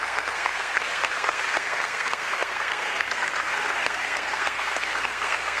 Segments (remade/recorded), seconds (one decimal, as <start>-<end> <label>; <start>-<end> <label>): 0.0-5.6 remade